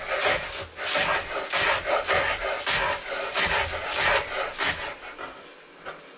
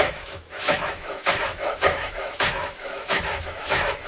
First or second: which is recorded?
first